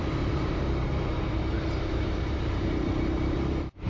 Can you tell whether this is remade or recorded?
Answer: remade